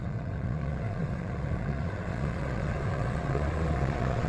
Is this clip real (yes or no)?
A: no